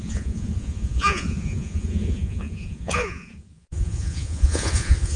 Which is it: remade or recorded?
remade